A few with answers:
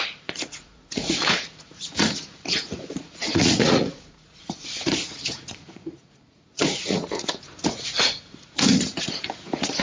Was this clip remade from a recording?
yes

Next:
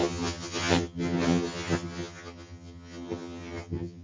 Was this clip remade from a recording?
yes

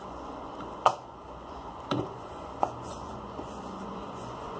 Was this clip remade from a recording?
yes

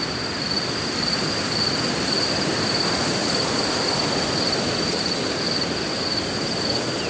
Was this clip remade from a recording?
no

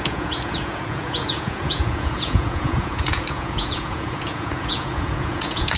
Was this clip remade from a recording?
yes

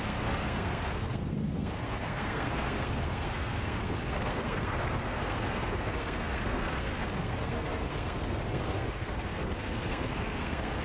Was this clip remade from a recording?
yes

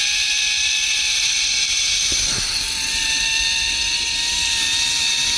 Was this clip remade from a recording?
no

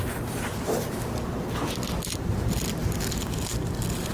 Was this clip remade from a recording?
no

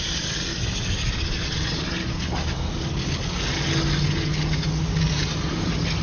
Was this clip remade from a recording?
no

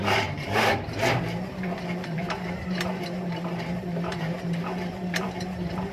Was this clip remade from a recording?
yes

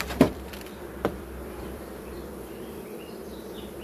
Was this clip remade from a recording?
yes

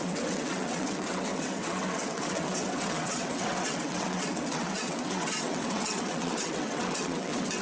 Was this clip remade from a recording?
yes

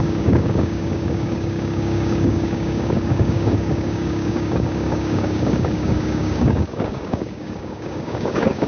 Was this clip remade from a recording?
yes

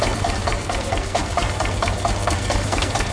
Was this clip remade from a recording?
yes